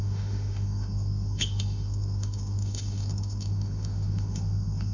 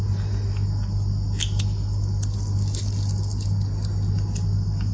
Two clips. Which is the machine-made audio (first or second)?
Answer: first